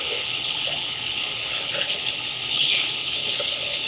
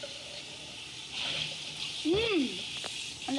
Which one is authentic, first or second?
second